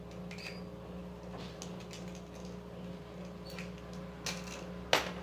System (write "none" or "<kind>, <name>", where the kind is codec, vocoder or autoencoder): none